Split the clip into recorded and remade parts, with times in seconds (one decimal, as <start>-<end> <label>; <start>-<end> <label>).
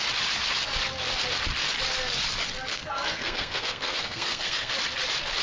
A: 0.0-2.7 recorded; 2.7-4.7 remade; 4.7-5.4 recorded